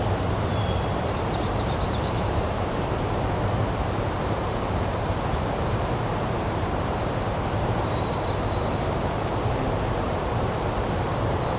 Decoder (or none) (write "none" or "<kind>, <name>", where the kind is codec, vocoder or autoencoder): vocoder, BigVGAN v2